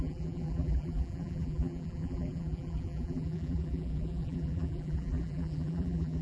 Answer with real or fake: fake